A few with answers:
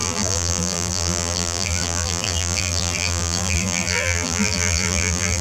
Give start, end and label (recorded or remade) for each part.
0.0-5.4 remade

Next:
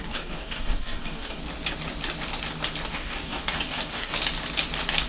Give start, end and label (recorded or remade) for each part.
0.0-1.4 remade; 1.4-2.9 recorded; 2.9-4.1 remade; 4.1-5.1 recorded

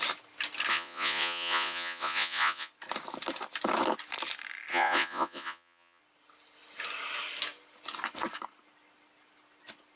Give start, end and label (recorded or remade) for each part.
0.0-0.7 recorded; 0.7-2.7 remade; 2.7-4.7 recorded; 4.7-6.0 remade; 6.0-10.0 recorded

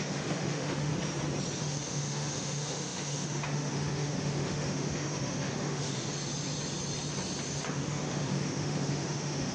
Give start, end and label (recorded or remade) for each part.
0.0-0.9 remade; 0.9-1.6 recorded; 1.6-6.1 remade; 6.1-7.7 recorded; 7.7-9.5 remade

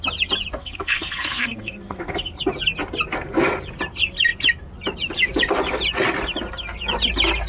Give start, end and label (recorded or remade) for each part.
0.0-0.6 recorded; 0.6-2.4 remade; 2.4-7.5 recorded

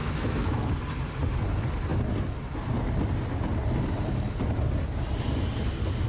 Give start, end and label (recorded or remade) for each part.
0.0-0.7 remade; 0.7-6.1 recorded